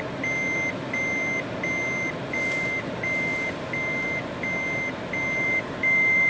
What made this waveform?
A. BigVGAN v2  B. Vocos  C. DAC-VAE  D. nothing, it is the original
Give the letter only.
D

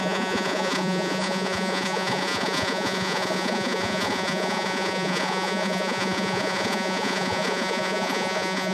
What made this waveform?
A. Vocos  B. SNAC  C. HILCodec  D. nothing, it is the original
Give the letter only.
A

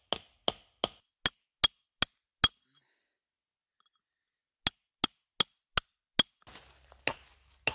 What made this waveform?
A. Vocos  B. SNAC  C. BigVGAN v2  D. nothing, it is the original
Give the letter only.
D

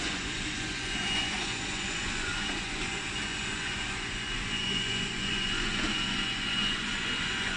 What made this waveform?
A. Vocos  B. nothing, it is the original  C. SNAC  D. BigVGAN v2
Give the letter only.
A